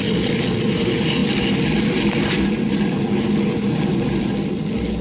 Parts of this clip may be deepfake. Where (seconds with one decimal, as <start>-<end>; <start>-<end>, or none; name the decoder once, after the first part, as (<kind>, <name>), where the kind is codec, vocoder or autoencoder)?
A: none